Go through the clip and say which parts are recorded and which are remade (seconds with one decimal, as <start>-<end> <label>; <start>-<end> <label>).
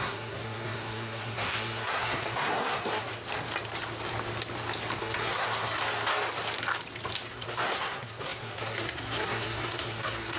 0.0-3.1 remade; 3.1-5.0 recorded; 5.0-5.8 remade; 5.8-7.3 recorded; 7.3-10.4 remade